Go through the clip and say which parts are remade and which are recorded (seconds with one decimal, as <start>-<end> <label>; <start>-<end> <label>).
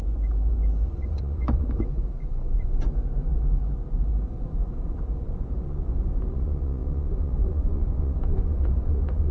0.0-9.3 remade